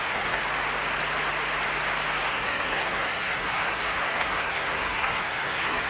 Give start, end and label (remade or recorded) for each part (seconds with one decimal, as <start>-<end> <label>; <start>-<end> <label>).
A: 0.0-0.4 remade; 0.4-2.3 recorded; 2.3-5.9 remade